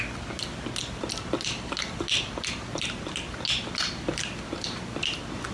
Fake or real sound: real